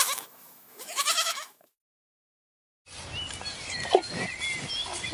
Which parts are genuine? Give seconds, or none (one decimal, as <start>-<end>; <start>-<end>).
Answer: 1.9-5.1